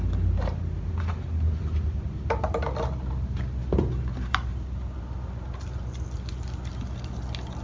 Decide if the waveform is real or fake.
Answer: real